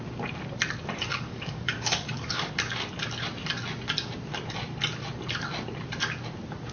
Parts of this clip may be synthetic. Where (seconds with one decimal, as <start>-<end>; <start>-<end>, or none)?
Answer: 1.1-2.5